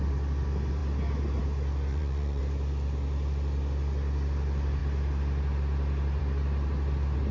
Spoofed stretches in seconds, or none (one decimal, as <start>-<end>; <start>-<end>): 1.9-2.4